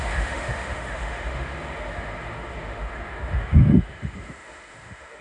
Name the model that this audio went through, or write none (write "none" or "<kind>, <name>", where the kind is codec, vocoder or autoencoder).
autoencoder, DAC-VAE